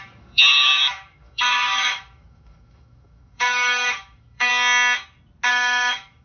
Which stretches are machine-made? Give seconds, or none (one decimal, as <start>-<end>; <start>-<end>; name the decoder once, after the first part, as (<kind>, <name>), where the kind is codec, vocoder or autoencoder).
0.0-4.5 (autoencoder, DAC-VAE); 5.5-6.2